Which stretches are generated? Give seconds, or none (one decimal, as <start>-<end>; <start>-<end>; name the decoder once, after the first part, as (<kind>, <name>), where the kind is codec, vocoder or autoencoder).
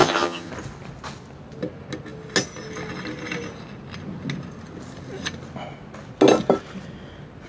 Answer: 0.0-0.5 (vocoder, HiFi-GAN)